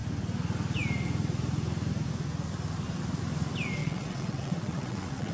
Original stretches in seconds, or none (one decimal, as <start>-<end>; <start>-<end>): 0.0-3.8